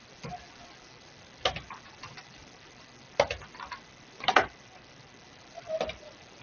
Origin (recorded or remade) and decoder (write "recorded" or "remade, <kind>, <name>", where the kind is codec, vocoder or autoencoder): recorded